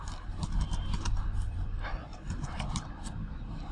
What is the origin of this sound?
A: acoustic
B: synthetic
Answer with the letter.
B